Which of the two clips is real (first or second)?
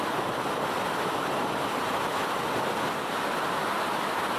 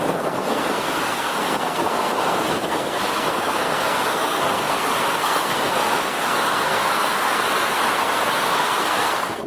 first